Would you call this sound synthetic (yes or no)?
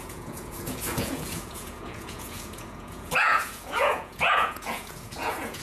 yes